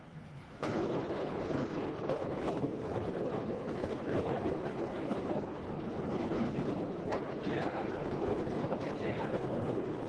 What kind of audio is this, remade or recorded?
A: remade